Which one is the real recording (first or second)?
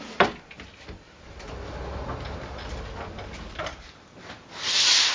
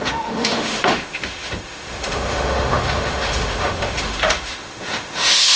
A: first